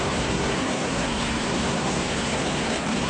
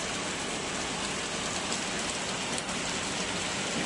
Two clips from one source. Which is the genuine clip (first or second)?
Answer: second